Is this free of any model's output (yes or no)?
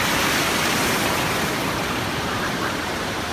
no